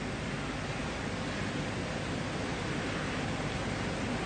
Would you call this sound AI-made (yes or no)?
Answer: no